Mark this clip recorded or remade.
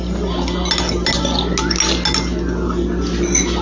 recorded